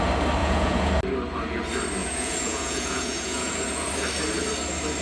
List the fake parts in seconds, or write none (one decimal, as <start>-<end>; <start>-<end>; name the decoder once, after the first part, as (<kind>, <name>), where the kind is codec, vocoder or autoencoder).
0.4-0.9 (vocoder, Vocos); 2.0-3.9